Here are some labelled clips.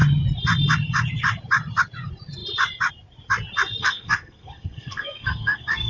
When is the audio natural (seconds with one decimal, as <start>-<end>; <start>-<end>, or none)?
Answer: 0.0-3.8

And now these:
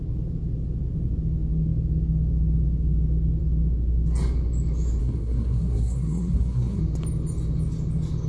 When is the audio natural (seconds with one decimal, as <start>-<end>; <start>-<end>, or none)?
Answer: 0.0-5.0; 6.8-8.3

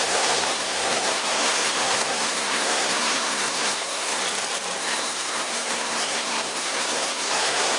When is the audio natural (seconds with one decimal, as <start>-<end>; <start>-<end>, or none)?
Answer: 4.2-4.8

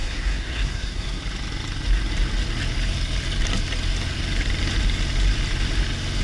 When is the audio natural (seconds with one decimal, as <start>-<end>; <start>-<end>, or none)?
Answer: 1.2-6.2

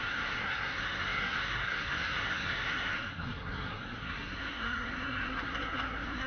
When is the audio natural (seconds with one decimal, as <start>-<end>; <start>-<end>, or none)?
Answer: none

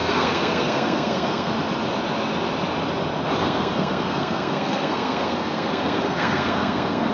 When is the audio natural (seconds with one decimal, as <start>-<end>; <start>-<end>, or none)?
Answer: 1.5-3.4

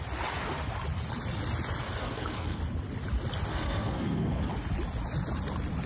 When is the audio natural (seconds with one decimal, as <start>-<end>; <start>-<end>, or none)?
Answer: 0.0-2.0; 2.6-3.5; 4.5-5.9